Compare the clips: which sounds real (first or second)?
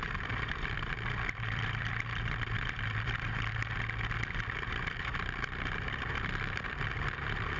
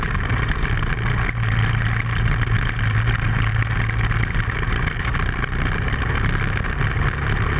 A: second